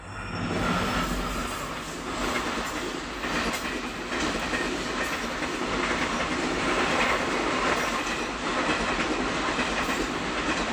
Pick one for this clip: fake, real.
real